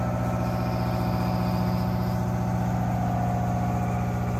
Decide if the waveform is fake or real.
real